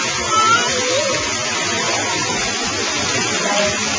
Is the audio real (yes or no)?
yes